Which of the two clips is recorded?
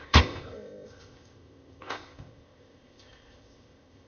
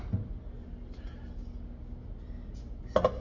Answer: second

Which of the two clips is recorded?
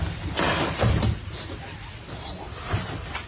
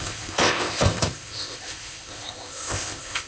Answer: first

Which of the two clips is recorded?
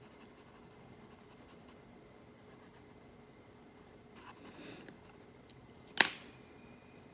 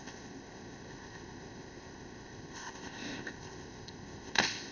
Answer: first